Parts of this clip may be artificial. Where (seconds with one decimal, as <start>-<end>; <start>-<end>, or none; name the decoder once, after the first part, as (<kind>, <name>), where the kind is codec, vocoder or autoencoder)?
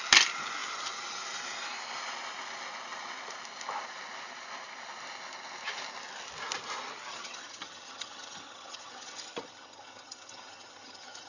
7.1-11.3 (vocoder, HiFi-GAN)